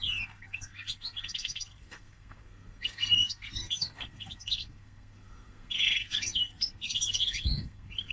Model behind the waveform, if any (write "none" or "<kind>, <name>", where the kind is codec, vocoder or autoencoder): codec, SNAC